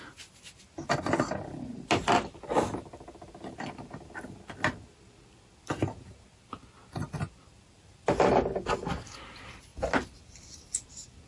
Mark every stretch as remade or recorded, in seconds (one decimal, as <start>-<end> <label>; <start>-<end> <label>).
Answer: 0.0-11.3 recorded